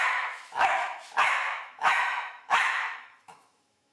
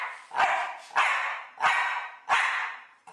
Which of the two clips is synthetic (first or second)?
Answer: first